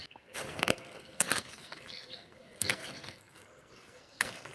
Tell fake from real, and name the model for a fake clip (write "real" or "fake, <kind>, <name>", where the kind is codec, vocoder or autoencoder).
fake, codec, SNAC